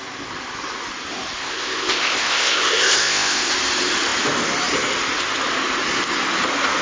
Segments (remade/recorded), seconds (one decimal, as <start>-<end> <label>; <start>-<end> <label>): 0.0-1.4 recorded; 1.4-3.5 remade; 3.5-6.8 recorded